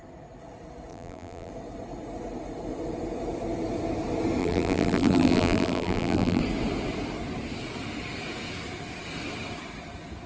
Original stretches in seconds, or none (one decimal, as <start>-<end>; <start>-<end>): 0.0-0.9; 1.5-4.4; 6.4-10.3